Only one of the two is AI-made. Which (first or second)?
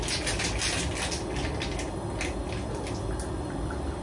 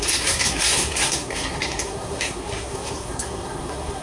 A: second